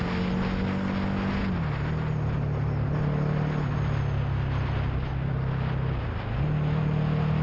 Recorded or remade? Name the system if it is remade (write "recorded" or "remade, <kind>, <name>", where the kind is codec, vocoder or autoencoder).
recorded